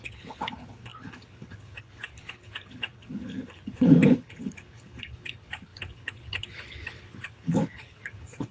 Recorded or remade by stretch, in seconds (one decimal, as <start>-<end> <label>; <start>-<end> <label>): 0.0-8.5 remade